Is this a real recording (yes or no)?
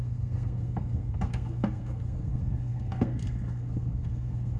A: no